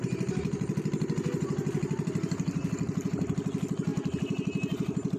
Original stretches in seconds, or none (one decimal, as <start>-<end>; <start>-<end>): 0.0-5.2

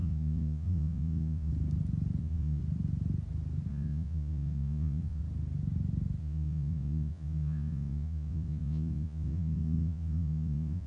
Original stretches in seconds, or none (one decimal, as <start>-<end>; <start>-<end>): 1.5-2.2; 2.6-3.7; 5.2-6.2